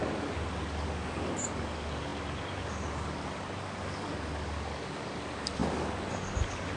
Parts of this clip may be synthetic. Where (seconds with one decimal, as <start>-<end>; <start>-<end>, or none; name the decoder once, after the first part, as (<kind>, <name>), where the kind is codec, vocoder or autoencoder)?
0.0-6.8 (codec, DAC)